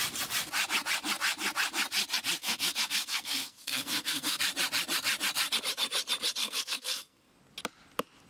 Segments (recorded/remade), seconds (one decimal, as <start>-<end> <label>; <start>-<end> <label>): 0.0-2.4 recorded; 2.4-4.4 remade; 4.4-6.4 recorded; 6.4-7.3 remade; 7.3-8.3 recorded